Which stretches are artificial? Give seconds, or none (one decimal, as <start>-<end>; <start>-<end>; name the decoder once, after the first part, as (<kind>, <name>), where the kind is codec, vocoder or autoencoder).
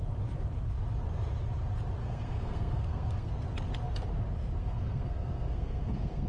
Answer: 2.0-3.3 (codec, SNAC); 4.6-6.3